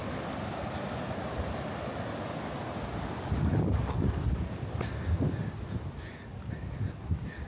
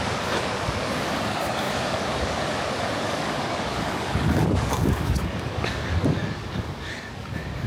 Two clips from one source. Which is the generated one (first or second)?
second